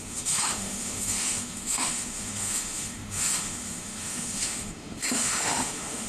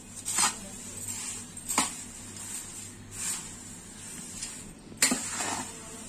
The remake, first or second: first